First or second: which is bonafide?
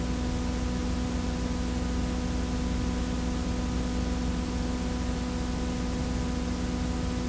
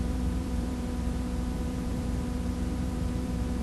first